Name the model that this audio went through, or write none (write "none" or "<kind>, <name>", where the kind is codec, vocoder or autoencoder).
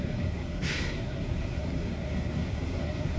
codec, SNAC